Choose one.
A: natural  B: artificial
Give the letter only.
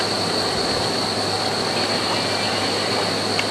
A